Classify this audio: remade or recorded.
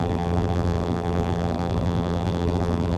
remade